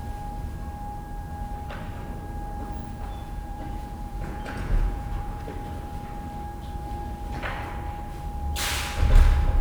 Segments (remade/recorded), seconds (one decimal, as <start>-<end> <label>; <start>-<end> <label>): 0.0-2.8 recorded; 2.8-5.4 remade; 5.4-9.6 recorded